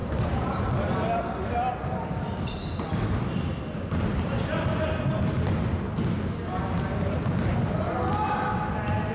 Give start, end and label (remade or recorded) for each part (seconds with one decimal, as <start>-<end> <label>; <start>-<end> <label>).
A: 0.0-0.6 remade; 0.6-9.1 recorded